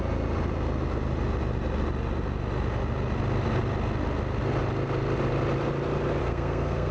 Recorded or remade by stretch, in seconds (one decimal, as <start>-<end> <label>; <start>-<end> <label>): 0.0-6.2 recorded; 6.2-6.9 remade

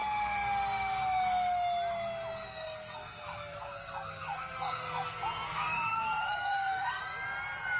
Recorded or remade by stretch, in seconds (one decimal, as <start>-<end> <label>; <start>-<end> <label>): 0.0-2.5 recorded; 2.5-7.0 remade; 7.0-7.8 recorded

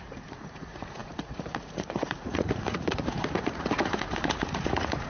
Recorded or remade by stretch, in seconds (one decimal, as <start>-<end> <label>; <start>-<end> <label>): 0.0-5.1 remade

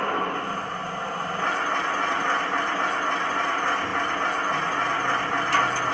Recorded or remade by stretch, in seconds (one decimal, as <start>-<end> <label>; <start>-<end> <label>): 0.0-5.9 recorded